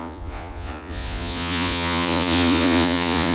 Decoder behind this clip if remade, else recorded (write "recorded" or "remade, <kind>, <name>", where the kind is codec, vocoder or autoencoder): remade, vocoder, Vocos